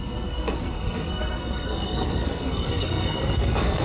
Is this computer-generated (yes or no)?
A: yes